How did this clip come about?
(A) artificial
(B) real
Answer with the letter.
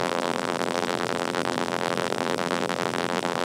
A